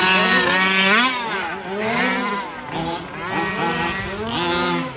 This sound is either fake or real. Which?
real